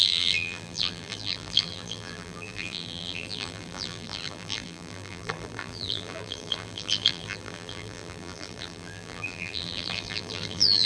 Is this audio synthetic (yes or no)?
yes